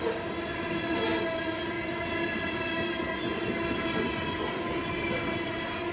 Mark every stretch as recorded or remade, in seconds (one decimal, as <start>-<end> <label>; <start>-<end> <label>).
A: 0.0-5.9 recorded